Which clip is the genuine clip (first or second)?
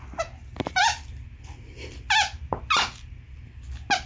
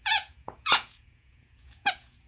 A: first